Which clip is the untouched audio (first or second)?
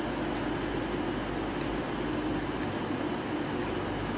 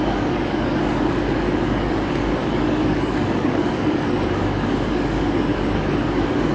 first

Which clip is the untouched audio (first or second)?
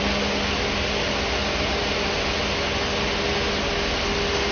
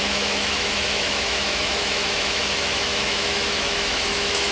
first